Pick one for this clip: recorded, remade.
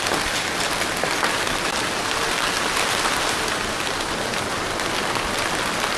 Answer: recorded